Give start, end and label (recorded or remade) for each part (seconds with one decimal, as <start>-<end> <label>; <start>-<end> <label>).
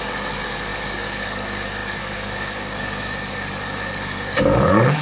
0.0-5.0 remade